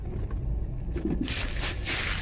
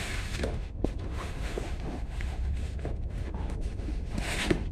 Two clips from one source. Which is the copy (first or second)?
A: second